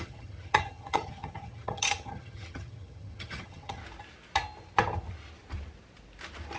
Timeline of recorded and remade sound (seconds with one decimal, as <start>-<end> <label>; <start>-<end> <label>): 0.0-3.8 remade; 3.8-6.6 recorded